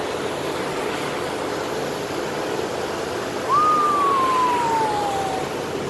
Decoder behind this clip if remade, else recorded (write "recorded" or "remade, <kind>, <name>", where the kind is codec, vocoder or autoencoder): recorded